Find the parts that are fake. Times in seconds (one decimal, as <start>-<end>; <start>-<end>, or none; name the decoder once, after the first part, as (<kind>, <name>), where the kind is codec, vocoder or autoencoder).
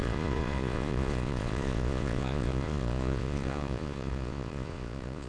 0.0-5.3 (vocoder, Vocos)